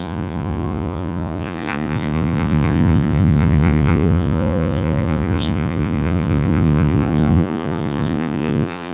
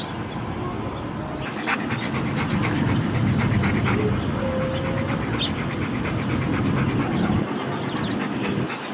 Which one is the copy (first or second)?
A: first